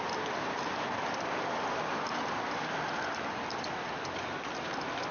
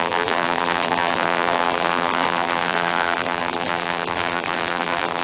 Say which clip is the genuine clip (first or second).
first